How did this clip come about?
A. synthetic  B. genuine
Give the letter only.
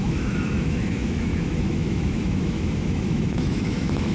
A